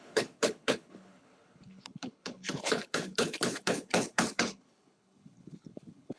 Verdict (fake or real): fake